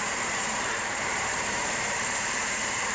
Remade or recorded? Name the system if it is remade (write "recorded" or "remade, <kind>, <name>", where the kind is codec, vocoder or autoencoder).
remade, vocoder, BigVGAN v2